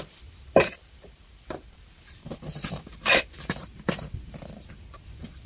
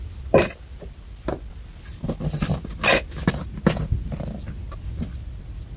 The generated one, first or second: first